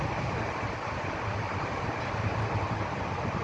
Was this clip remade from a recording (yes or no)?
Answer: no